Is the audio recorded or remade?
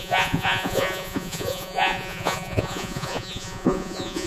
remade